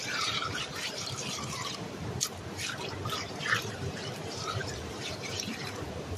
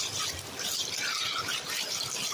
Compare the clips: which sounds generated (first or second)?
first